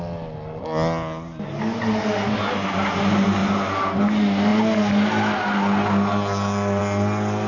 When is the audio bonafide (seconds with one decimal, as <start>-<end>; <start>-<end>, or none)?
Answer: 0.0-7.5